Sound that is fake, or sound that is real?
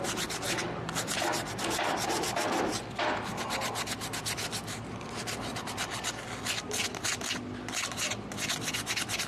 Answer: real